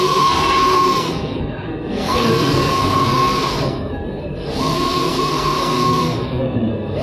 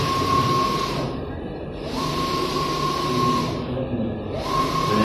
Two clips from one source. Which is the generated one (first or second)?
first